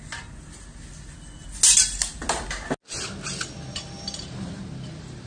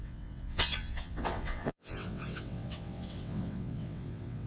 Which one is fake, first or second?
second